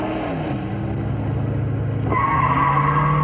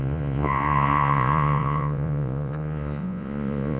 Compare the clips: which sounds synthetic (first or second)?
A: second